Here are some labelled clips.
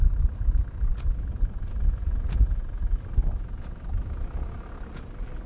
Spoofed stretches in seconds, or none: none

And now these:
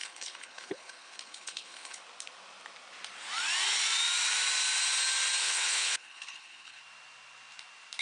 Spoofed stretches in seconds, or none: 0.0-2.0 (codec, HILCodec); 5.4-6.8